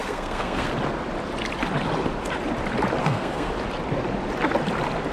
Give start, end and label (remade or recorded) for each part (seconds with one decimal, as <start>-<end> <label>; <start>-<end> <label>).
0.0-0.7 remade; 0.7-3.0 recorded; 3.0-3.5 remade; 3.5-5.1 recorded

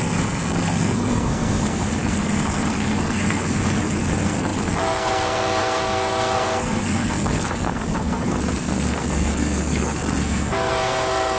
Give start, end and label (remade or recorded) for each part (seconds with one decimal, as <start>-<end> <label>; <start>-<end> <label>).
0.0-11.4 remade

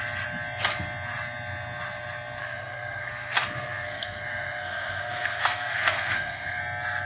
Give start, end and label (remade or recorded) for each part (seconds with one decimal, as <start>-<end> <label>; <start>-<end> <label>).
0.0-2.4 recorded; 2.4-6.6 remade; 6.6-7.0 recorded

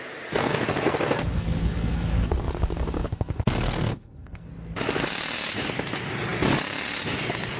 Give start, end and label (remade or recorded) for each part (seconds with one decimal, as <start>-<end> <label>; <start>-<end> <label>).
0.0-0.4 recorded; 0.4-4.5 remade; 4.5-7.6 recorded

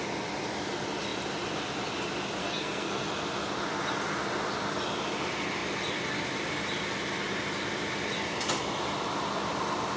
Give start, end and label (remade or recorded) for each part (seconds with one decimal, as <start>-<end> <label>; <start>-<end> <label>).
0.0-2.4 recorded; 2.4-3.1 remade; 3.1-10.0 recorded

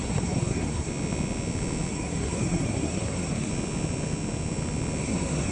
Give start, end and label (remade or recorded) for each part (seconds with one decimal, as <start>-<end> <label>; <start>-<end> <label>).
0.0-0.9 remade; 0.9-1.9 recorded; 1.9-3.5 remade; 3.5-5.0 recorded; 5.0-5.5 remade

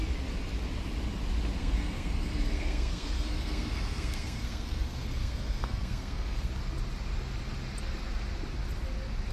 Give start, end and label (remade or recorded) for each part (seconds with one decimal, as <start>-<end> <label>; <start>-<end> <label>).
0.0-1.6 recorded; 1.6-6.5 remade; 6.5-9.3 recorded

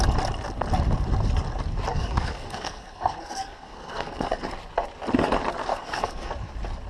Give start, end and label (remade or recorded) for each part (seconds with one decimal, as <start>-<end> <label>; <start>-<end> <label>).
0.0-1.9 recorded; 1.9-4.4 remade; 4.4-5.7 recorded; 5.7-6.3 remade; 6.3-6.9 recorded